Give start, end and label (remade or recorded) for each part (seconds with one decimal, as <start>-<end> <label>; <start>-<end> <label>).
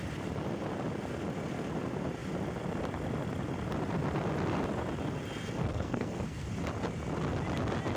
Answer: 0.0-5.6 recorded; 5.6-6.5 remade; 6.5-8.0 recorded